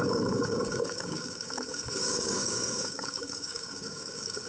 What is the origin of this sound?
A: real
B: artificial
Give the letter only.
B